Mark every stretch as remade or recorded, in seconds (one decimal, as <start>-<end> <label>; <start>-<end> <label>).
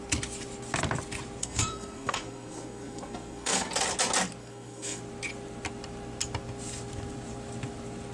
0.0-1.4 recorded; 1.4-3.7 remade; 3.7-4.4 recorded; 4.4-5.0 remade; 5.0-8.1 recorded